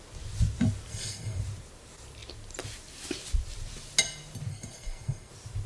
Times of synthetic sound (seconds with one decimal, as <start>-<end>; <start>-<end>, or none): 0.9-1.4; 4.5-5.3